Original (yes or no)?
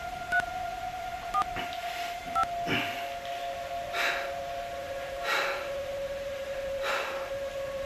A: yes